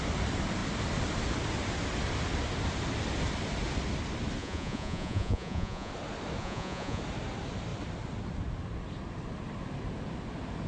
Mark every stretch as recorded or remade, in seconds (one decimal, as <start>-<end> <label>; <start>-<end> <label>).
0.0-4.4 recorded; 4.4-5.9 remade; 5.9-6.4 recorded; 6.4-7.0 remade; 7.0-10.7 recorded